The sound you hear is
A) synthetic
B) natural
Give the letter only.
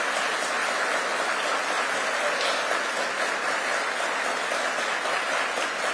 B